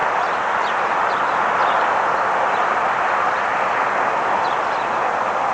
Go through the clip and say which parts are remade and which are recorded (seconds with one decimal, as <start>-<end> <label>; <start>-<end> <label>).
0.0-5.5 recorded